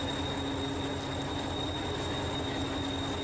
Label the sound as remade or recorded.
recorded